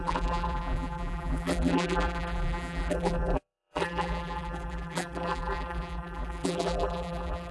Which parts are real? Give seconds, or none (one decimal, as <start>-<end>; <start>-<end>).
none